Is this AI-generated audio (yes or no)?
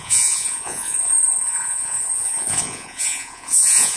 yes